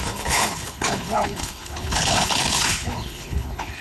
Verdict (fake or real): fake